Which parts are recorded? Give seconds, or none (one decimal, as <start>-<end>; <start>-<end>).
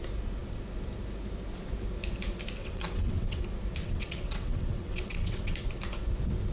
0.0-2.6; 3.4-3.8; 5.6-6.5